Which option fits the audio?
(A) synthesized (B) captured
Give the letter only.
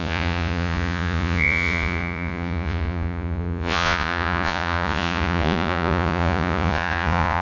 A